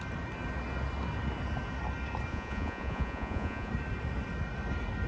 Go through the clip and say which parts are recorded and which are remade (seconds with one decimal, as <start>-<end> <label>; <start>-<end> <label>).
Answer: 0.0-2.3 recorded; 2.3-3.7 remade; 3.7-5.1 recorded